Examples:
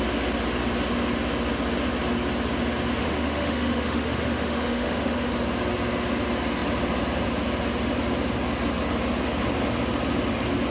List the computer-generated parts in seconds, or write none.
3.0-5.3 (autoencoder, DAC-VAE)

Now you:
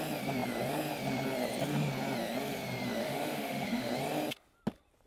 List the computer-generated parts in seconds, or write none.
3.0-3.9 (autoencoder, DAC-VAE)